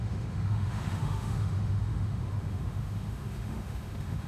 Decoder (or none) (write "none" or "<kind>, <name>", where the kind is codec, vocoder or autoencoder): autoencoder, DAC-VAE